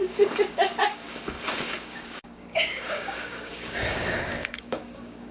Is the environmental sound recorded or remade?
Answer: remade